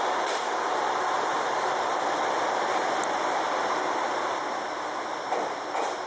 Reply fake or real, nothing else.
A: real